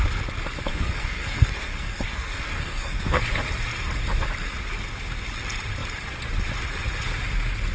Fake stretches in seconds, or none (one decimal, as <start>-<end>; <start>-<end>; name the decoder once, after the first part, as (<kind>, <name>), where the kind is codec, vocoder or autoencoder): 0.7-3.2 (codec, SNAC)